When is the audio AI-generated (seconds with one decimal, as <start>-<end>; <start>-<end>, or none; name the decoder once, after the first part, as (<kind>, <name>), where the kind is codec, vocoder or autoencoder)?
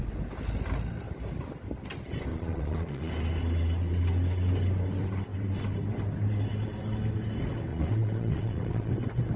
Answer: 2.3-3.1 (vocoder, Vocos); 7.7-8.9